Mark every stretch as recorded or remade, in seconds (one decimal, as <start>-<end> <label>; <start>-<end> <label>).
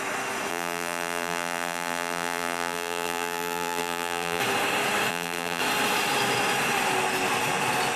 0.0-0.5 recorded; 0.5-4.4 remade; 4.4-5.1 recorded; 5.1-5.6 remade; 5.6-8.0 recorded